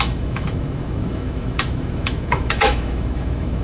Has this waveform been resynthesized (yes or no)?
yes